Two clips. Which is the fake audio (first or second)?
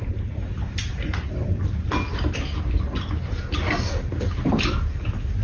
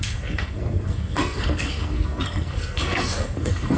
second